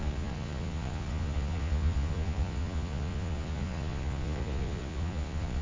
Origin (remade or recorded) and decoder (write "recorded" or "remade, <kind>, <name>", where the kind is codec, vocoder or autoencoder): remade, vocoder, Vocos